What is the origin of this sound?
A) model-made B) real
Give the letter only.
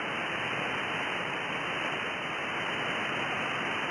B